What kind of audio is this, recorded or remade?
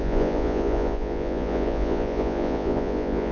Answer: remade